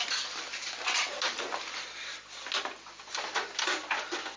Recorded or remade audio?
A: recorded